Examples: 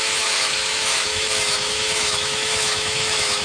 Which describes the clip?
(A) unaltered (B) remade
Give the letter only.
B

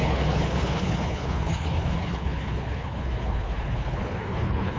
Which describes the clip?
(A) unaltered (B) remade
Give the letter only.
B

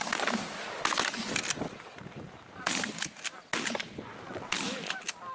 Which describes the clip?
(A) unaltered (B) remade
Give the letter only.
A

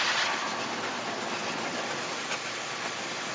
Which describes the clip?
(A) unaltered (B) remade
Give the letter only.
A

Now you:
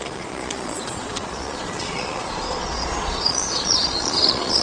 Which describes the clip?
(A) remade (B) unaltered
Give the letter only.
A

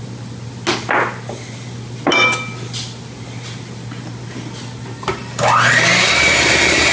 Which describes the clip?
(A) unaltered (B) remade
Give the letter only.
A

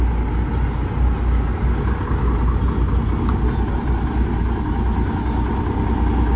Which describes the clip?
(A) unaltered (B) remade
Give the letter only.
A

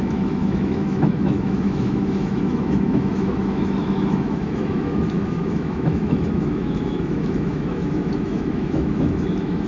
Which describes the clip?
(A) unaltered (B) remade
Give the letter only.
B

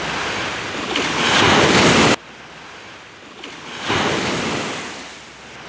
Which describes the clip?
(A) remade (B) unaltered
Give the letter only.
B